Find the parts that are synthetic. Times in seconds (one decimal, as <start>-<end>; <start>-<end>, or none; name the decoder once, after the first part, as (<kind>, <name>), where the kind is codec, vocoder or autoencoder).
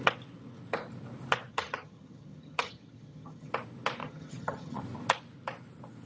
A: 1.5-3.5 (vocoder, HiFi-GAN); 4.0-4.8